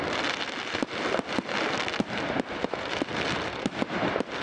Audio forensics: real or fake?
fake